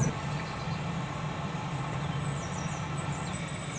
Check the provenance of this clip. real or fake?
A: real